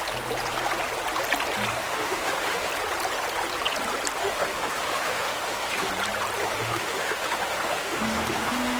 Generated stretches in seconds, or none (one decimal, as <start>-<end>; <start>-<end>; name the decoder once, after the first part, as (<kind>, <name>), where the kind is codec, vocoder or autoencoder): 1.7-2.7 (autoencoder, DAC-VAE); 4.2-5.9; 6.4-8.8